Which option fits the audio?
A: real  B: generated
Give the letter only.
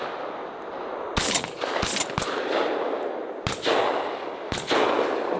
A